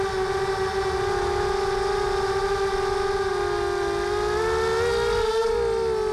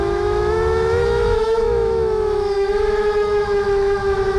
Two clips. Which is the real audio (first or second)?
first